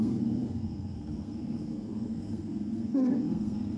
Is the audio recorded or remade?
remade